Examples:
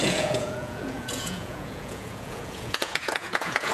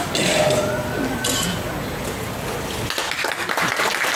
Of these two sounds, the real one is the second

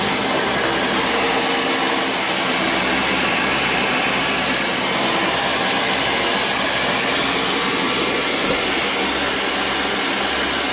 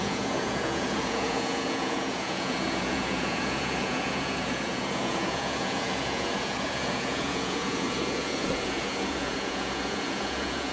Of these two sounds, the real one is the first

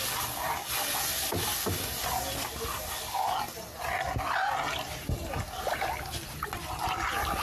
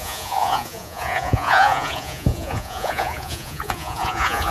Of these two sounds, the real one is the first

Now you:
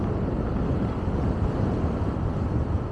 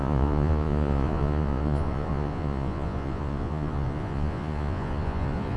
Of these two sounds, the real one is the first